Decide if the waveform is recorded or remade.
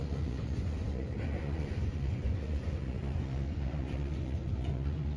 remade